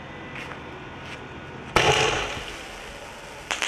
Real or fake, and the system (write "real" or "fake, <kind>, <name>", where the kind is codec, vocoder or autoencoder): real